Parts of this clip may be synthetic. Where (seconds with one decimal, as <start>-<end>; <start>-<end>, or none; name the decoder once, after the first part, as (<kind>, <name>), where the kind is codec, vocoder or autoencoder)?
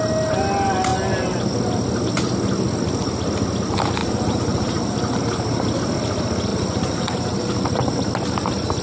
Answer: 0.9-1.4 (vocoder, BigVGAN v2); 4.0-5.7; 6.5-7.4